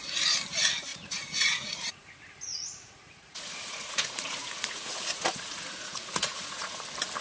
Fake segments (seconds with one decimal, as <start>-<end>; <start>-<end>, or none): 0.9-2.1; 2.5-6.8